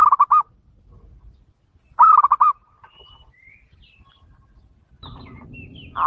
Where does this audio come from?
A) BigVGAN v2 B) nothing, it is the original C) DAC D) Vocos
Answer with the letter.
A